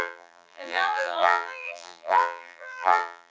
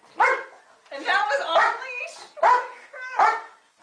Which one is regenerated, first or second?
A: first